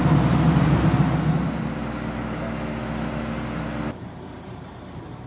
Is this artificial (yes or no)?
no